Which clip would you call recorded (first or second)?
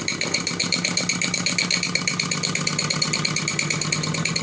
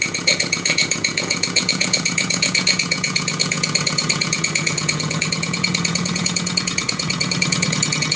first